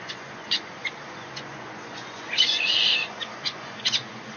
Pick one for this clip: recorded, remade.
remade